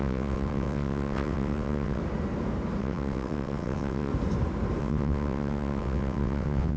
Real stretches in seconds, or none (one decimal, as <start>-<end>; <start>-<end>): 2.0-2.8; 4.1-4.8